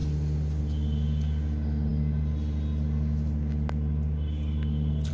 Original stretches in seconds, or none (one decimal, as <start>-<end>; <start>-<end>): 0.0-5.1